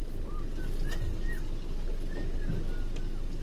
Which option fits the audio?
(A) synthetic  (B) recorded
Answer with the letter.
B